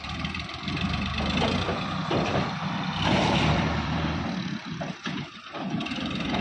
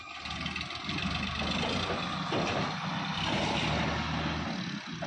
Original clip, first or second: second